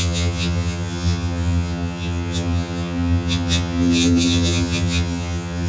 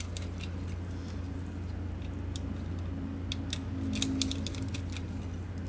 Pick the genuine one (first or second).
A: second